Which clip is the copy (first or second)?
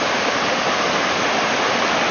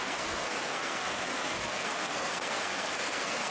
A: second